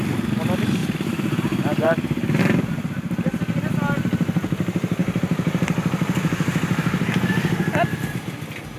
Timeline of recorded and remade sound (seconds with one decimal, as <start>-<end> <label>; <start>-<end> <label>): 0.0-0.8 recorded; 0.8-2.4 remade; 2.4-8.8 recorded